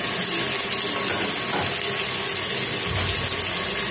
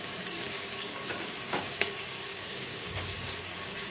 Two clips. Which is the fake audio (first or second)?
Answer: second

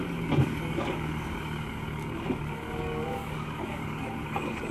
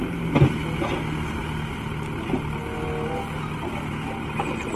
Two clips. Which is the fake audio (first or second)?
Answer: first